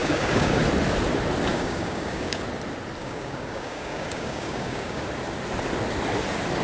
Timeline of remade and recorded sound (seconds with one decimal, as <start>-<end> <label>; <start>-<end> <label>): 0.0-0.6 remade; 0.6-1.5 recorded; 1.5-2.4 remade; 2.4-3.0 recorded; 3.0-5.0 remade; 5.0-6.6 recorded

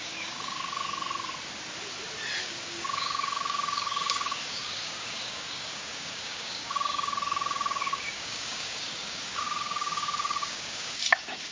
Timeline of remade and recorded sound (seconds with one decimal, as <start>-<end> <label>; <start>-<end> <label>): 0.0-0.8 remade; 0.8-2.4 recorded; 2.4-11.5 remade

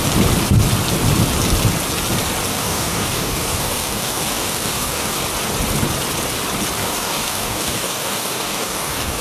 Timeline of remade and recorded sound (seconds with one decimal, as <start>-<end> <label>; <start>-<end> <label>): 0.0-2.5 recorded; 2.5-5.2 remade; 5.2-6.8 recorded; 6.8-9.2 remade

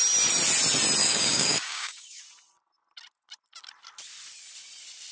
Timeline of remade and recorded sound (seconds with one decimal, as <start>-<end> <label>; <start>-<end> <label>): 0.0-1.0 recorded; 1.0-2.2 remade; 2.2-5.1 recorded

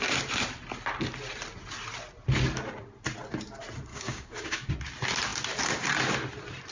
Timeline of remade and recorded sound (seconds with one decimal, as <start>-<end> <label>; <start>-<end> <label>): 0.0-3.9 recorded; 3.9-4.7 remade; 4.7-6.7 recorded

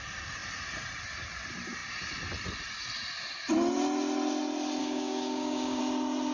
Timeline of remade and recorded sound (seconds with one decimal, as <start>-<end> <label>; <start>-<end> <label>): 0.0-4.8 recorded; 4.8-5.8 remade; 5.8-6.3 recorded

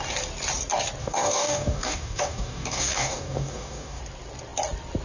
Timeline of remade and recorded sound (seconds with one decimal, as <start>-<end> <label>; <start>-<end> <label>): 0.0-1.0 recorded; 1.0-4.0 remade; 4.0-5.0 recorded

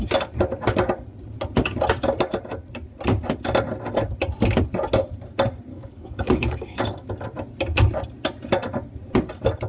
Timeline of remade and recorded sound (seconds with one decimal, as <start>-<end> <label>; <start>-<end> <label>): 0.0-5.7 recorded; 5.7-7.1 remade; 7.1-9.7 recorded